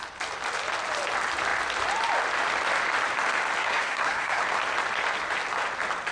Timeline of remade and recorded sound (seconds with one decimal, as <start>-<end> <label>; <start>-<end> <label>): 0.0-3.6 recorded; 3.6-4.4 remade; 4.4-6.1 recorded